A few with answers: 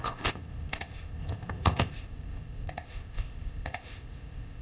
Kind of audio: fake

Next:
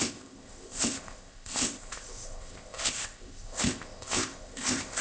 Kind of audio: fake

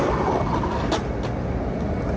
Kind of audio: real